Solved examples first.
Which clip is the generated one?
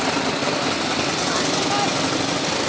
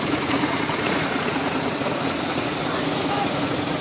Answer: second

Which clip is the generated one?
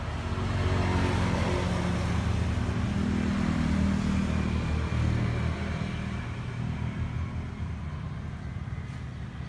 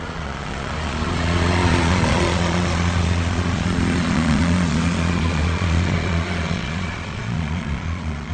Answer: second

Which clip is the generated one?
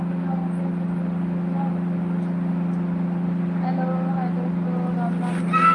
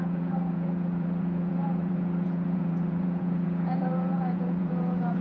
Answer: second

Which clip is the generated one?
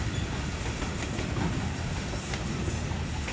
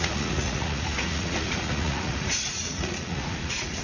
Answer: second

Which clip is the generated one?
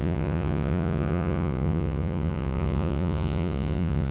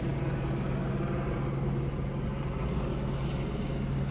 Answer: first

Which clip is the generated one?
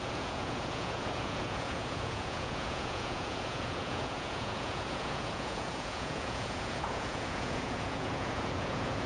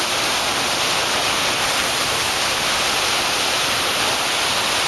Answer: first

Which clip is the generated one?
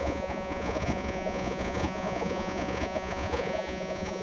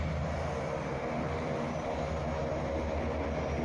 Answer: first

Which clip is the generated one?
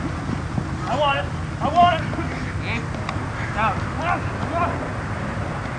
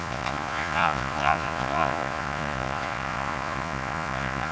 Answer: second